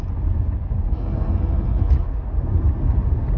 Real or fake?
real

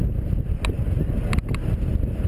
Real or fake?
real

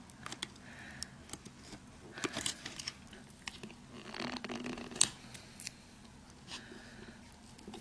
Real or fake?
real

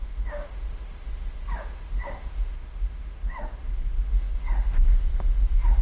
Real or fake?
fake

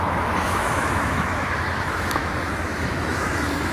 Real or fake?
fake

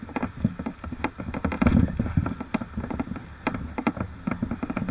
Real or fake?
real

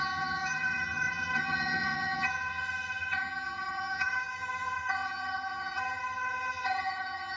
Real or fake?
fake